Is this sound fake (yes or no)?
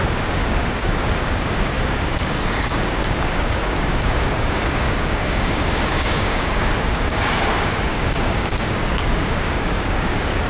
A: yes